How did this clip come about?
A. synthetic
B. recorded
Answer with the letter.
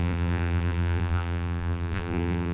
A